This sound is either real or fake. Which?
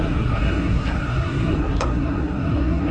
fake